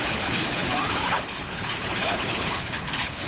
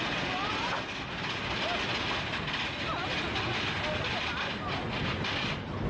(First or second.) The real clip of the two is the second